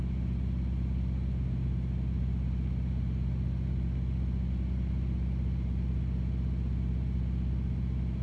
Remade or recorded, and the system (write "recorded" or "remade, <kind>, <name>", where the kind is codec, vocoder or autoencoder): recorded